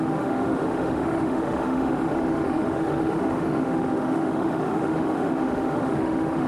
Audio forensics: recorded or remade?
remade